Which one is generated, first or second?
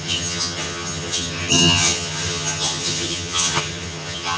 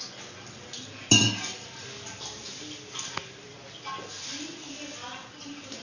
first